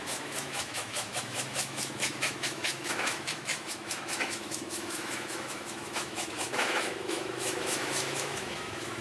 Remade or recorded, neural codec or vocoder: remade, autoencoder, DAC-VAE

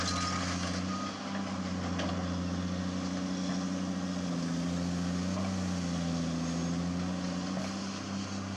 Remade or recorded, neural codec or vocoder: recorded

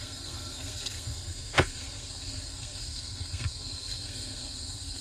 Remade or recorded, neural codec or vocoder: remade, codec, SNAC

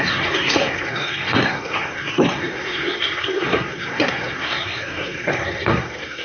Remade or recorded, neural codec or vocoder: remade, codec, SNAC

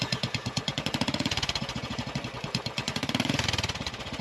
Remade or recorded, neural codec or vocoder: remade, vocoder, Vocos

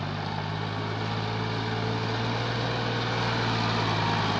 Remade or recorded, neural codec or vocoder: recorded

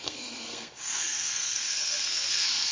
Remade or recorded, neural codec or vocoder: remade, codec, SNAC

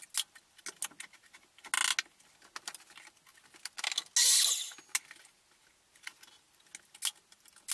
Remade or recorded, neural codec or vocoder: recorded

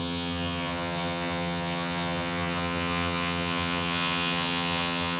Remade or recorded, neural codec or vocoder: remade, vocoder, HiFi-GAN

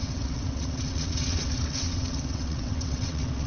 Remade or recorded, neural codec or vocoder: remade, vocoder, WaveNeXt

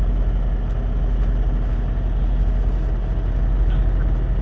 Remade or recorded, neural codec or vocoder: recorded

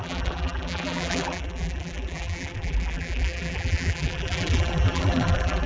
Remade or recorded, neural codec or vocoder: remade, vocoder, BigVGAN v2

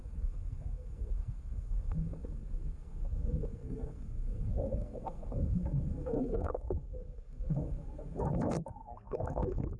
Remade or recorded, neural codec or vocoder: remade, codec, SNAC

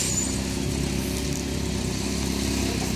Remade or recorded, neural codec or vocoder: recorded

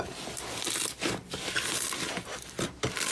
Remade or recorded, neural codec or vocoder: recorded